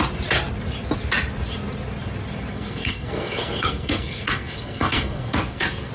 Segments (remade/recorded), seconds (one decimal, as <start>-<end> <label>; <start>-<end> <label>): 0.0-2.5 recorded; 2.5-5.9 remade